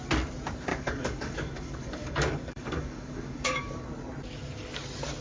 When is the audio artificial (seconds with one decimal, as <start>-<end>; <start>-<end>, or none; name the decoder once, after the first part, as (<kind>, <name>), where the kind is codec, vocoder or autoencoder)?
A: 0.7-3.8 (codec, DAC)